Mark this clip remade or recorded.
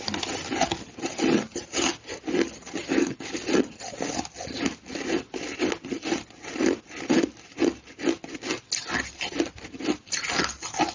recorded